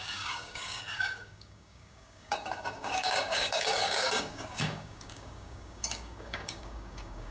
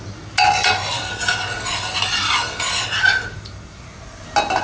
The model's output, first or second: first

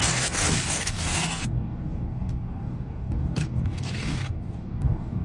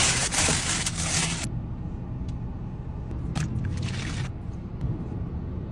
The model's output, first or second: first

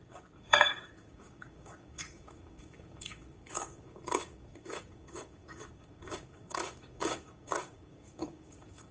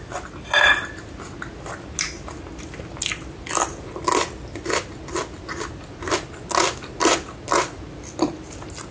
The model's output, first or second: first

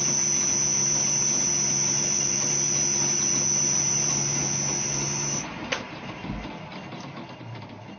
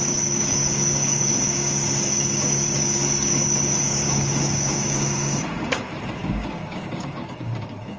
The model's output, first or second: second